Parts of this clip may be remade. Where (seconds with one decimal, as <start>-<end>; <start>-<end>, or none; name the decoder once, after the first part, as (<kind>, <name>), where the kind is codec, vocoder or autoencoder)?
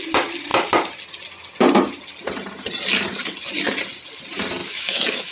4.6-5.3 (autoencoder, DAC-VAE)